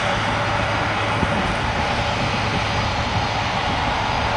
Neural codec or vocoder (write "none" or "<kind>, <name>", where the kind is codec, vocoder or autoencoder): none